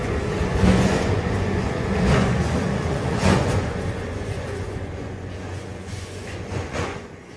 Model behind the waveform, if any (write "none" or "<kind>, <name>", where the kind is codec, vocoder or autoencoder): vocoder, Vocos